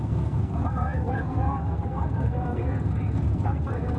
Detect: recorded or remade remade